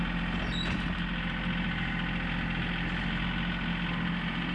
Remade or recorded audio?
recorded